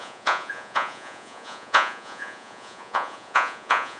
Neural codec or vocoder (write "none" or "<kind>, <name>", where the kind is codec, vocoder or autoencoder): vocoder, Vocos